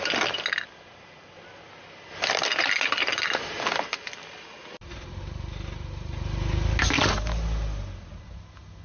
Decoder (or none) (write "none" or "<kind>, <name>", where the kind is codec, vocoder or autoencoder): none